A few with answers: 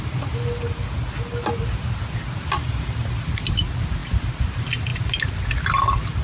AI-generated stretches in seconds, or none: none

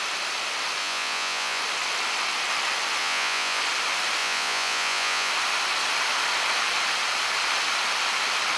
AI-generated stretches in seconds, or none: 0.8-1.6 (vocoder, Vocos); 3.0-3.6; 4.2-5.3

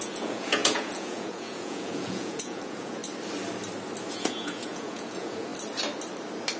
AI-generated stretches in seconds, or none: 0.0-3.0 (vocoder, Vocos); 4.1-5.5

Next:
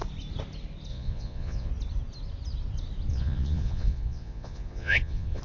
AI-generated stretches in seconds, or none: 0.9-1.7 (vocoder, Vocos); 3.1-5.4

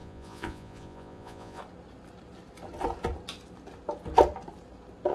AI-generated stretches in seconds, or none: 0.0-1.6 (vocoder, Vocos)

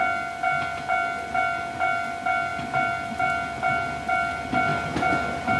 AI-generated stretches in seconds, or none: none

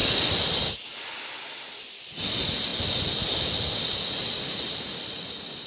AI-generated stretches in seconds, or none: none